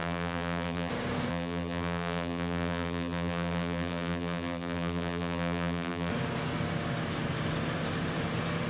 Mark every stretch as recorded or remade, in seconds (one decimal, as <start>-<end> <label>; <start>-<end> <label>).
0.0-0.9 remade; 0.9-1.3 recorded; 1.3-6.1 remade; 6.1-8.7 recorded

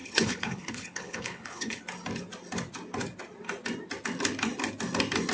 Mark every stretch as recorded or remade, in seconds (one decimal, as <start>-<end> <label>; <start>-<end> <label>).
0.0-1.8 remade; 1.8-5.3 recorded

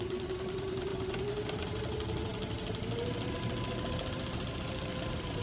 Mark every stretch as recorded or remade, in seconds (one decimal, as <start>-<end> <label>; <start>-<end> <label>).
0.0-0.9 remade; 0.9-1.5 recorded; 1.5-2.3 remade; 2.3-4.1 recorded; 4.1-5.4 remade